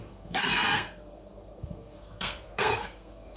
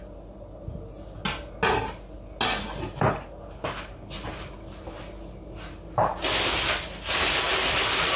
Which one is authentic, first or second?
second